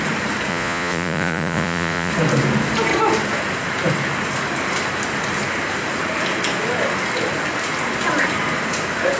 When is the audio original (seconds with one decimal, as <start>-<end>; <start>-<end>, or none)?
0.0-0.5; 2.1-9.2